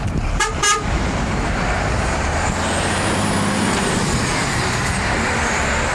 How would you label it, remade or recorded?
remade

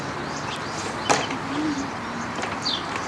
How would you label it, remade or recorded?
remade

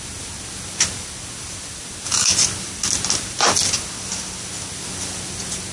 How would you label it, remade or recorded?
recorded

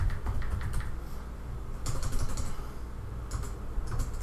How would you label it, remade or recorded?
recorded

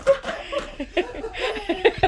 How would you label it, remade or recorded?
remade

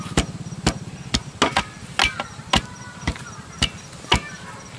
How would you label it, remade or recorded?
recorded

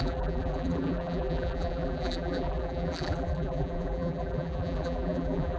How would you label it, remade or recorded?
remade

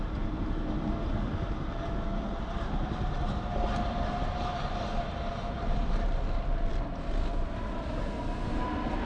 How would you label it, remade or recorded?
recorded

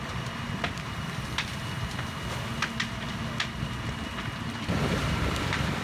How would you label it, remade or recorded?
recorded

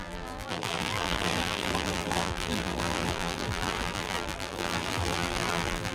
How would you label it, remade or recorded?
remade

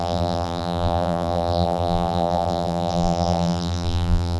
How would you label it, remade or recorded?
remade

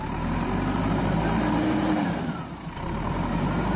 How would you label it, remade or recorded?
remade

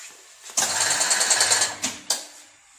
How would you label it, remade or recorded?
recorded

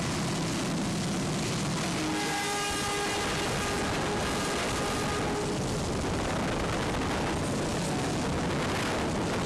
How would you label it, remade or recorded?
recorded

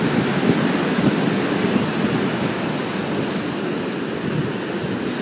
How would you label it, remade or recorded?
recorded